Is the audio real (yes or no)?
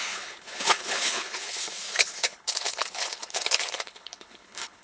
no